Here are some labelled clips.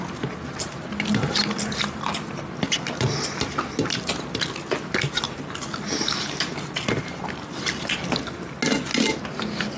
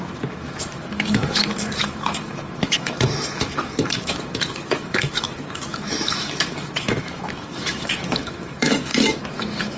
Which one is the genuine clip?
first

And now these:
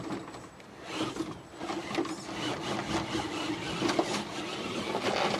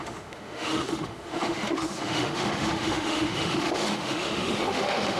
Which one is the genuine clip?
first